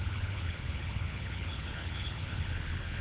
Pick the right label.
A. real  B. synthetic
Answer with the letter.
B